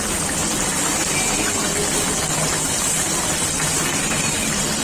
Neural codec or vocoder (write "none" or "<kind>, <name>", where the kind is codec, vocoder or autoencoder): none